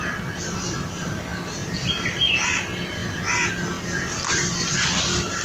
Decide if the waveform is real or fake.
real